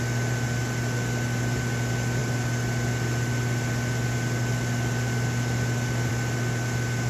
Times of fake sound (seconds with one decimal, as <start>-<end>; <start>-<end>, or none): none

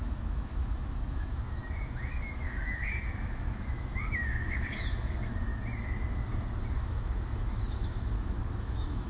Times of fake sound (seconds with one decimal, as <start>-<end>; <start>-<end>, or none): 0.0-5.5; 6.7-9.1

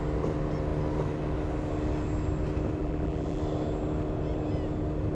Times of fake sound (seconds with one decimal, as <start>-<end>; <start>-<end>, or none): 2.8-3.4

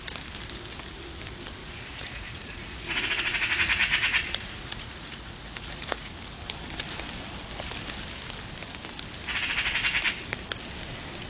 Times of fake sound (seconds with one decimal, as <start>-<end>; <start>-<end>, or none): 1.6-6.1